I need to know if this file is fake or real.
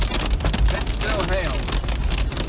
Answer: real